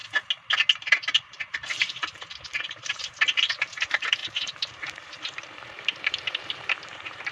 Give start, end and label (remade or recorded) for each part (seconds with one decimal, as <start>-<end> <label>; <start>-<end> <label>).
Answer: 0.0-0.8 recorded; 0.8-7.3 remade